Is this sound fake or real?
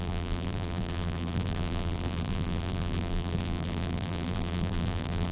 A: fake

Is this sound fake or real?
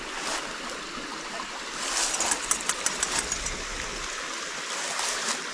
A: real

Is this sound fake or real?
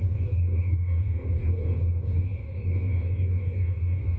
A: fake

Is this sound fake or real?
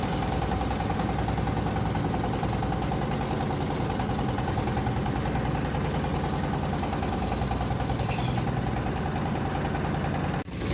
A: real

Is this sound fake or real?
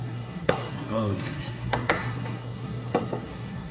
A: fake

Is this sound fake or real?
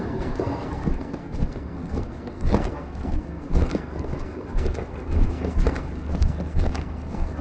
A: fake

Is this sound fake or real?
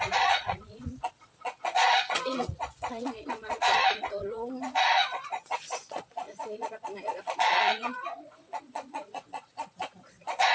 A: fake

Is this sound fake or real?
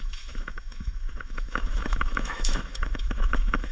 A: fake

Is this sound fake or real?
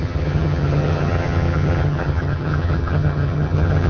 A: fake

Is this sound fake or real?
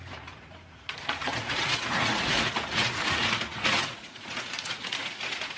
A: fake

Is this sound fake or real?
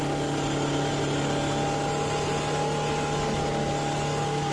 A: real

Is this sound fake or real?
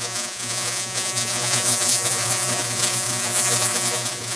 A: fake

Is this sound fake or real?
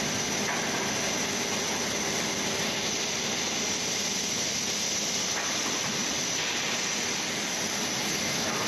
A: real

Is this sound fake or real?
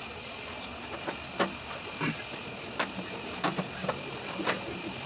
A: real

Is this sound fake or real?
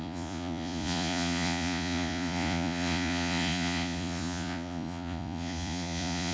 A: fake